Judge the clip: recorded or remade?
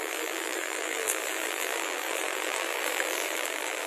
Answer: remade